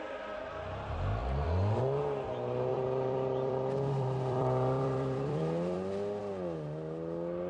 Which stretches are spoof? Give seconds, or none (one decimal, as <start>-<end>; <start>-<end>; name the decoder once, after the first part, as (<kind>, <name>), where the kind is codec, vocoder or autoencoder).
1.2-1.8 (vocoder, BigVGAN v2); 2.7-6.2